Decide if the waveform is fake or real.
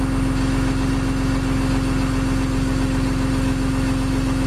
real